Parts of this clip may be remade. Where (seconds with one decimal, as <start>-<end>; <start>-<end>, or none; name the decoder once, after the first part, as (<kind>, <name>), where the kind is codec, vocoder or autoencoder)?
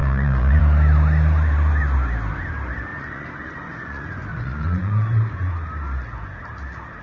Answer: 0.0-0.6 (vocoder, Vocos); 2.9-5.5